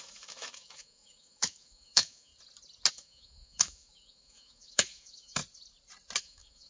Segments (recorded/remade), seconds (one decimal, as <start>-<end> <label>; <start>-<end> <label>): 0.0-2.3 remade; 2.3-2.9 recorded; 2.9-5.4 remade; 5.4-6.2 recorded; 6.2-6.7 remade